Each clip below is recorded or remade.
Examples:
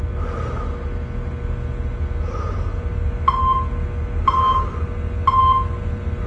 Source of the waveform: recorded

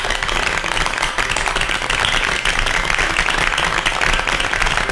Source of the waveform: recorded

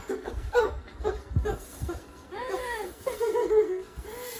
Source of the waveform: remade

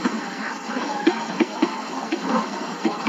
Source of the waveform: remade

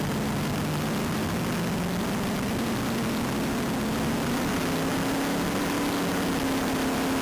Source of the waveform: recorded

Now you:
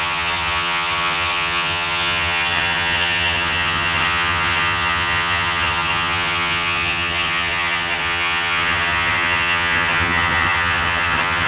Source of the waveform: remade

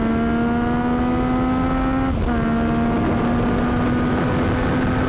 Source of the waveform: recorded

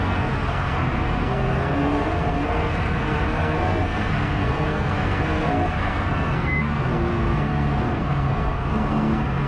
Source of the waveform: remade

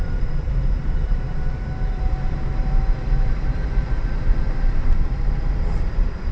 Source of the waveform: remade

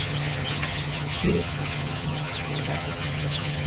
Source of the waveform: remade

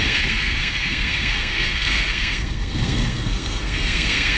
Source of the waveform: remade